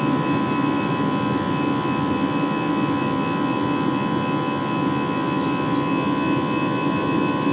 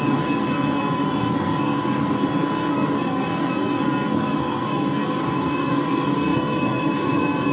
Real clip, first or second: first